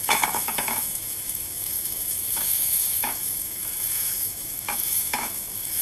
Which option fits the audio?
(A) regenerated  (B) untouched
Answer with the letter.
A